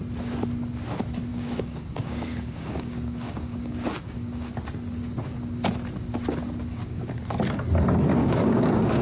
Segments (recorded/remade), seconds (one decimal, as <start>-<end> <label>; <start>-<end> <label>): 0.0-1.3 recorded; 1.3-4.5 remade; 4.5-6.7 recorded; 6.7-7.2 remade; 7.2-8.2 recorded; 8.2-9.0 remade

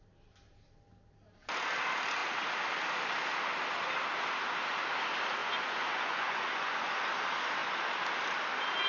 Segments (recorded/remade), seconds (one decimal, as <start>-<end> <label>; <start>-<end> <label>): 0.0-5.4 recorded; 5.4-6.9 remade; 6.9-8.9 recorded

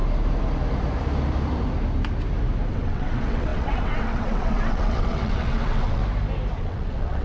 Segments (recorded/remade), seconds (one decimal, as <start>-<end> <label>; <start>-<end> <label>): 0.0-2.7 recorded; 2.7-6.0 remade; 6.0-6.6 recorded; 6.6-7.2 remade